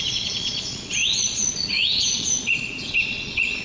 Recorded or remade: remade